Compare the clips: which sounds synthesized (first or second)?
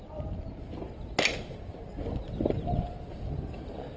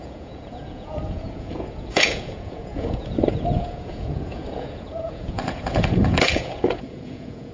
second